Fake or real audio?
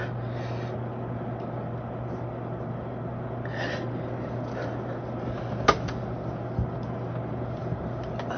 real